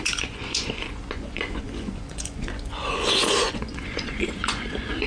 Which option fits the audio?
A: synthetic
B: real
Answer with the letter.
A